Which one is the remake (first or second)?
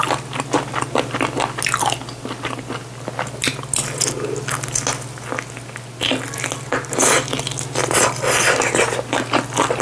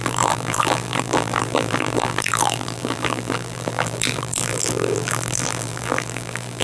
second